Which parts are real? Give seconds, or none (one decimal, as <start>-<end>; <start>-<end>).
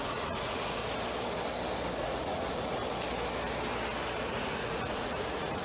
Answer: 0.8-2.0; 2.8-4.3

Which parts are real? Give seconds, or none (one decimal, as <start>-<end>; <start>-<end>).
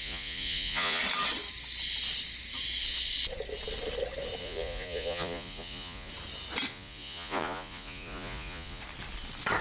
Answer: 1.0-4.4; 6.1-6.7; 8.8-9.6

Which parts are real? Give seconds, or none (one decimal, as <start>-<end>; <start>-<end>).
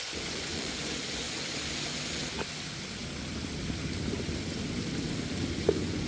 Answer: 2.2-5.5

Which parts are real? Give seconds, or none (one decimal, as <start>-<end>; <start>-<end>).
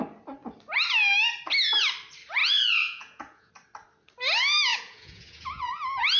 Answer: 0.0-2.4; 3.5-4.7; 5.7-6.2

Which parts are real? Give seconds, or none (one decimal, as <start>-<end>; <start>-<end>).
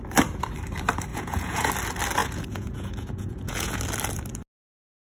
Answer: 0.0-1.1; 1.7-2.2; 3.8-5.0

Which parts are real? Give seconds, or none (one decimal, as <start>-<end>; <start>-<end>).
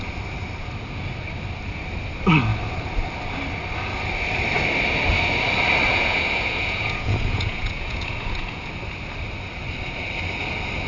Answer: 0.0-5.9; 8.7-10.9